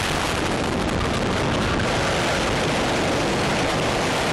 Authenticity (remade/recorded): recorded